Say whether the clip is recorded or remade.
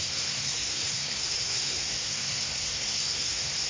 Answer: remade